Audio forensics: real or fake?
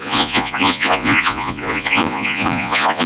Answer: fake